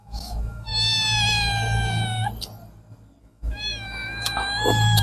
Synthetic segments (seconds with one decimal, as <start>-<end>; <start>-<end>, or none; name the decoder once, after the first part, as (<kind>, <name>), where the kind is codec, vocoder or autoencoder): 0.0-0.7 (autoencoder, DAC-VAE); 3.2-5.0